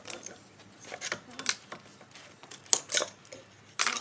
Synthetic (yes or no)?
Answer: no